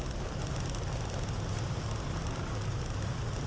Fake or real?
real